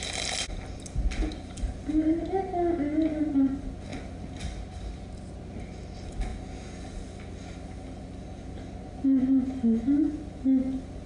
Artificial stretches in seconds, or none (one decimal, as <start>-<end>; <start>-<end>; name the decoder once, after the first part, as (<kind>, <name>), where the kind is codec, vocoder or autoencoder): none